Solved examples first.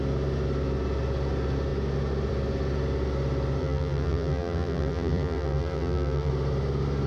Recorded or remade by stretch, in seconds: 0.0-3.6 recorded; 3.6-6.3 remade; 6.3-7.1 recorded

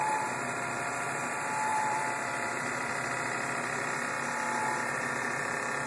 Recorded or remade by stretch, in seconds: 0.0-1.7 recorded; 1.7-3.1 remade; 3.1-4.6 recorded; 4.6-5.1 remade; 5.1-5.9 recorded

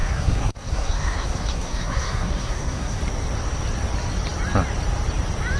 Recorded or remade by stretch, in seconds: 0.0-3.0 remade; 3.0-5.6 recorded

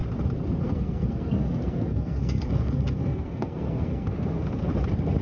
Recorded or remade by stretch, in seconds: 0.0-0.6 recorded; 0.6-4.7 remade; 4.7-5.2 recorded

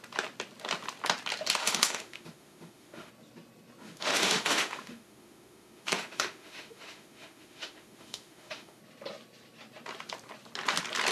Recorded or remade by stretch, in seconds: 0.0-1.6 recorded; 1.6-3.1 remade; 3.1-3.8 recorded; 3.8-8.8 remade; 8.8-11.1 recorded